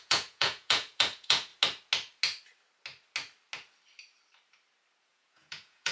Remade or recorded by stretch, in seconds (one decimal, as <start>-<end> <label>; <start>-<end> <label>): 0.0-1.5 remade; 1.5-5.0 recorded; 5.0-5.9 remade